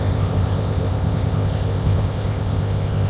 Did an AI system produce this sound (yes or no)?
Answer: yes